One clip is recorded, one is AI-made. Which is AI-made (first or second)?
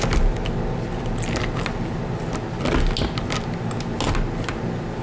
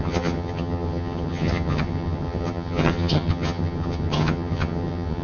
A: second